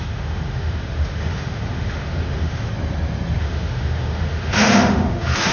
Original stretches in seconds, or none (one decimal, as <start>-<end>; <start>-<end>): 2.7-3.4